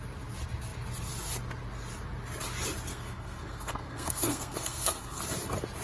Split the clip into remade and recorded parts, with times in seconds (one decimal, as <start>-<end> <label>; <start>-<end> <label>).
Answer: 0.0-2.9 recorded; 2.9-5.2 remade; 5.2-5.8 recorded